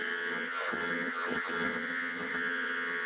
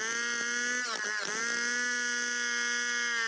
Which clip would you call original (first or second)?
second